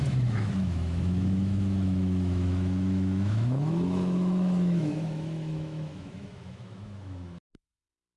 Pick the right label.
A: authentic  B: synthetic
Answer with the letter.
B